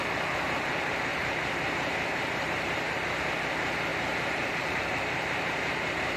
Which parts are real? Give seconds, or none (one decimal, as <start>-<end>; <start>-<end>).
0.0-1.1; 2.5-3.9; 5.4-6.2